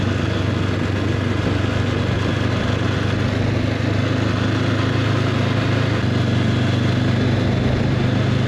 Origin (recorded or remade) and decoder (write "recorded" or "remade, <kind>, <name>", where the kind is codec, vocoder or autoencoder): recorded